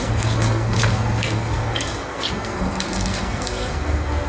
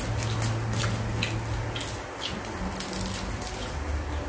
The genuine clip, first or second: second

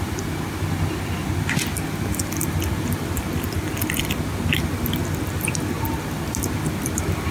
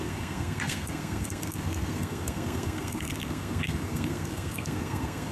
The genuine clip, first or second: first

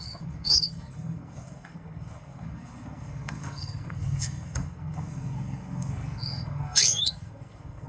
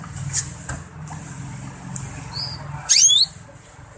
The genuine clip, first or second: second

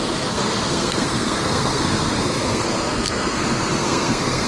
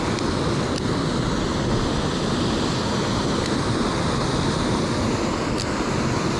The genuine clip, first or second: second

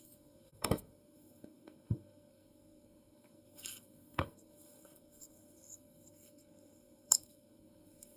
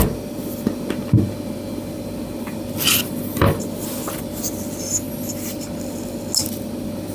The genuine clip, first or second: second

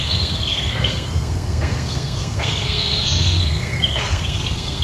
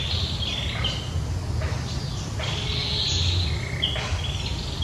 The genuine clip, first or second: second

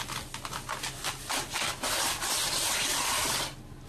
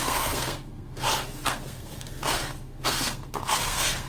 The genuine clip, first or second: first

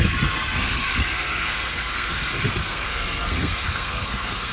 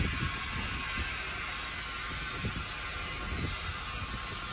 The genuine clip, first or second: second